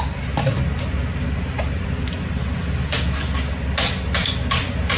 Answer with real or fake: real